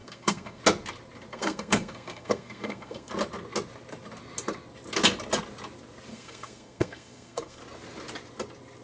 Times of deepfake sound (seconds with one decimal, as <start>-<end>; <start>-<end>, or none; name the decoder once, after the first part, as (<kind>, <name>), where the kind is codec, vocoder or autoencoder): 0.0-0.6 (codec, SNAC); 1.3-3.1; 6.1-7.6